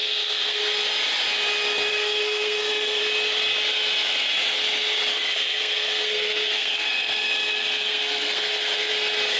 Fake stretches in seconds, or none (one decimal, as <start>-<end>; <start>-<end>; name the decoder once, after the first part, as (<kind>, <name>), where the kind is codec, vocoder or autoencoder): 0.0-0.6 (codec, SNAC); 1.9-3.0; 5.1-8.9